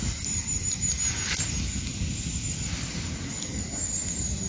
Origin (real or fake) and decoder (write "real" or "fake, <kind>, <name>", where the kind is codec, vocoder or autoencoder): real